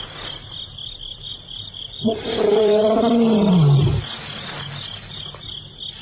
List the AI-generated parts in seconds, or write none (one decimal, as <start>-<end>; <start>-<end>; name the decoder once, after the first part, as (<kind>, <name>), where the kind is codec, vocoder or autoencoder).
1.3-3.5 (vocoder, BigVGAN v2)